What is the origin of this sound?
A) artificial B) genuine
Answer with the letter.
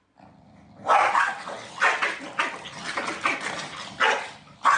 B